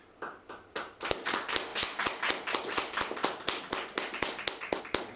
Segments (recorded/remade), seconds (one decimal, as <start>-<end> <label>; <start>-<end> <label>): 0.0-5.2 recorded